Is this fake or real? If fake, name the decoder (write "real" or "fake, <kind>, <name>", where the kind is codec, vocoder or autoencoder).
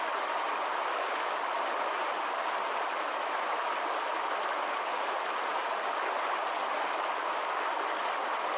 real